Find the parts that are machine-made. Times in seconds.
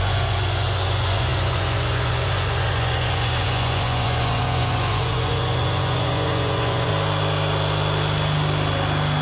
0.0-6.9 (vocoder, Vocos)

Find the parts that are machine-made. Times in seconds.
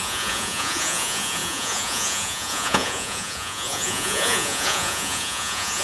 0.0-5.8 (vocoder, Vocos)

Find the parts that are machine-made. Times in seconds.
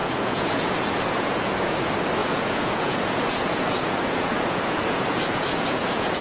0.0-1.8 (vocoder, Vocos); 2.2-6.2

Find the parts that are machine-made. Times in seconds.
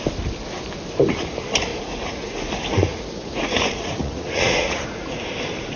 1.7-5.2 (vocoder, Vocos)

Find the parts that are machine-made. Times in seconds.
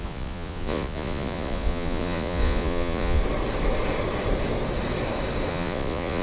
0.0-3.2 (vocoder, Vocos); 5.5-6.2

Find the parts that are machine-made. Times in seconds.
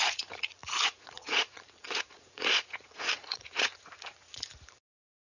0.0-5.4 (vocoder, Vocos)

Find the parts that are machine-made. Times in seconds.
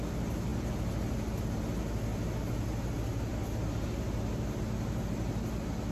none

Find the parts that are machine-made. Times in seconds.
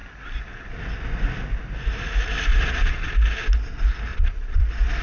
2.5-3.1 (vocoder, Vocos); 4.1-4.6